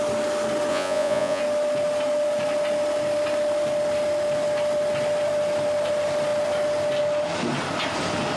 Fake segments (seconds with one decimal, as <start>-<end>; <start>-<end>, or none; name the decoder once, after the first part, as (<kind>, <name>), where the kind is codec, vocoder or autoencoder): 0.7-1.4 (vocoder, Vocos)

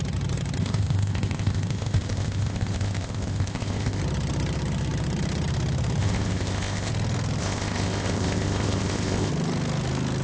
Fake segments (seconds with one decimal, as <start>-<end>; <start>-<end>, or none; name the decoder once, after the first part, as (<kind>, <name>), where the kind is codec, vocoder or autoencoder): 0.6-4.0 (codec, ZipCodec); 6.0-6.9; 7.4-9.3